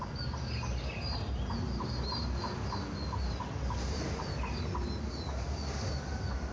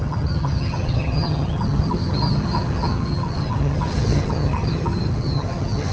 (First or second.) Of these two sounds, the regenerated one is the second